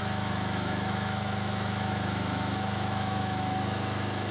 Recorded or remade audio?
remade